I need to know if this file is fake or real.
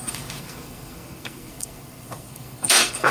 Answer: fake